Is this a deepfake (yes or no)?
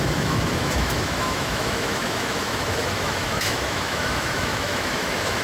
yes